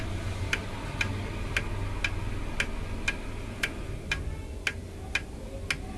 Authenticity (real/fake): real